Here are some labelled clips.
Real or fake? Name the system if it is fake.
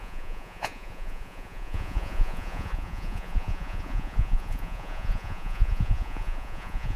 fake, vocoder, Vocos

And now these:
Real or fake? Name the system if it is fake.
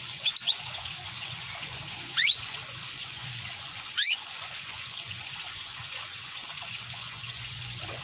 fake, vocoder, Vocos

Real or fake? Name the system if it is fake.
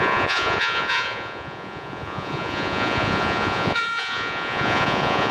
fake, vocoder, Vocos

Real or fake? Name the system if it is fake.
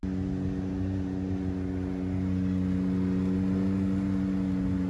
real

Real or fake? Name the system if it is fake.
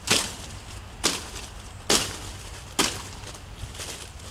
real